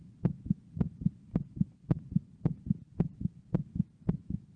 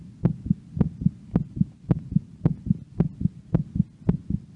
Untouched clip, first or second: second